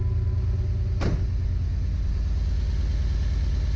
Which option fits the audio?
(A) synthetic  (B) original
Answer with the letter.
B